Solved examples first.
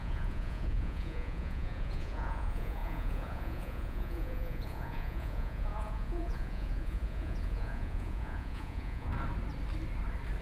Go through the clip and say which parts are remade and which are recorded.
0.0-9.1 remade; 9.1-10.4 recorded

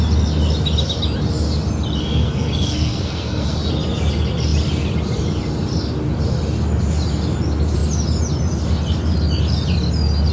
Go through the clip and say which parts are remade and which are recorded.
0.0-2.0 recorded; 2.0-3.7 remade; 3.7-10.3 recorded

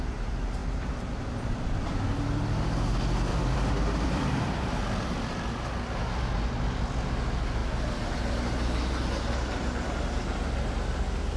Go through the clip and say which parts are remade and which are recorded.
0.0-0.6 recorded; 0.6-1.2 remade; 1.2-3.3 recorded; 3.3-4.8 remade; 4.8-7.6 recorded; 7.6-8.1 remade; 8.1-11.4 recorded